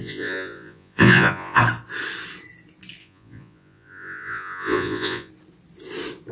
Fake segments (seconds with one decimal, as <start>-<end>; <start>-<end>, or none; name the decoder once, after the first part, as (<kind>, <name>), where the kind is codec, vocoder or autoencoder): 0.0-1.6 (vocoder, Vocos); 3.0-5.3